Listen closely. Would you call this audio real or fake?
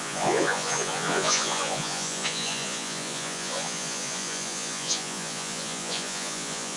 fake